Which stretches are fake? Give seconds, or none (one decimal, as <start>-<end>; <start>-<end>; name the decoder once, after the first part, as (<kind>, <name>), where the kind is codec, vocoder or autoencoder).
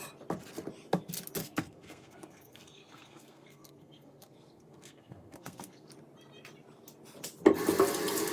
1.4-5.9 (codec, SNAC)